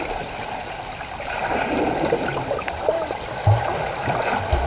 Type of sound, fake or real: real